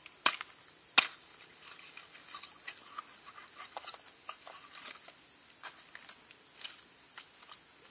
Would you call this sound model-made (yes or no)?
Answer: no